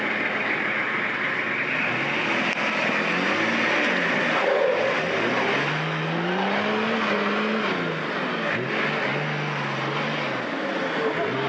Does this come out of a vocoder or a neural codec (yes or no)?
no